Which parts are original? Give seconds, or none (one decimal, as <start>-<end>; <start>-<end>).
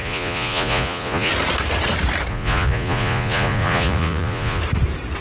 1.3-2.3; 4.6-5.2